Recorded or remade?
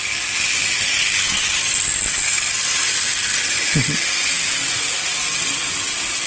recorded